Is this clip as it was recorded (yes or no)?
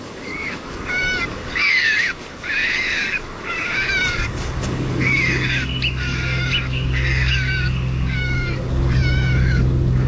no